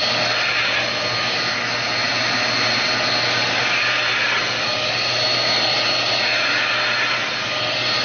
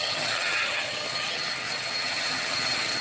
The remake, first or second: second